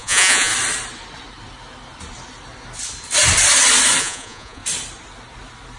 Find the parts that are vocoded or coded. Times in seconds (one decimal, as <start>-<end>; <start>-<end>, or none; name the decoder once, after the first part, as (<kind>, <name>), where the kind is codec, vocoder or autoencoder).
0.0-0.5 (vocoder, Vocos); 4.0-4.6